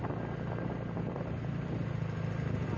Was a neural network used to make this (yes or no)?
no